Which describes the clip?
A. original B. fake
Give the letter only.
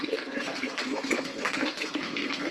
B